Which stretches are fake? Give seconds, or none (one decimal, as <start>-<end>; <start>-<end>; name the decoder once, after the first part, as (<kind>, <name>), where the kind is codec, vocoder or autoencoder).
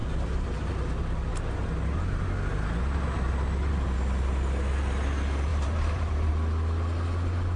0.0-0.7 (vocoder, BigVGAN v2); 5.5-6.3